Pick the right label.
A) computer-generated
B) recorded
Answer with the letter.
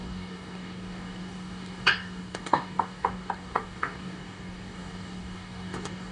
A